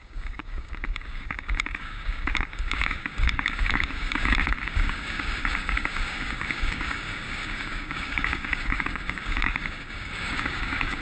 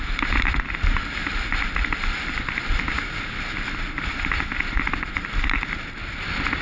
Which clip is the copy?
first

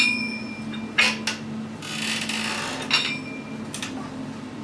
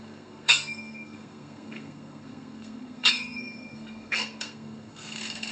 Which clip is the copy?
second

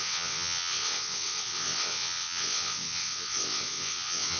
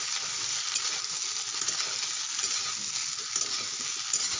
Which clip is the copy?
first